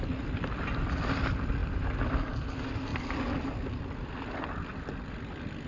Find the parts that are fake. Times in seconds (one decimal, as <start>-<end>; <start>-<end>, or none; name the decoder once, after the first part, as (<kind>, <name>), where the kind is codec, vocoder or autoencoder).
1.6-2.3 (vocoder, BigVGAN v2)